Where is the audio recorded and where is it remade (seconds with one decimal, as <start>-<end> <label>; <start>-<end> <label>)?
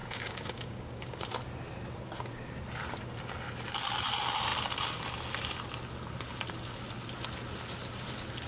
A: 0.0-1.2 remade; 1.2-8.5 recorded